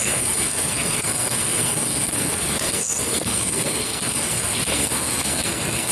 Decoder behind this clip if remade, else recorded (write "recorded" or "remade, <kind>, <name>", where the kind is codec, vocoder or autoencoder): remade, codec, SNAC